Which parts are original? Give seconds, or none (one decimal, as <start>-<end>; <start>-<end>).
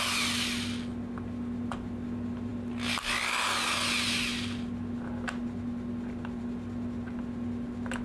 0.0-8.0